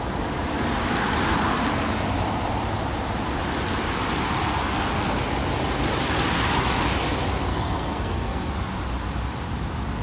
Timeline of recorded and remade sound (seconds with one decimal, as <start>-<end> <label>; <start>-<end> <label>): 0.0-7.5 recorded; 7.5-8.5 remade; 8.5-10.0 recorded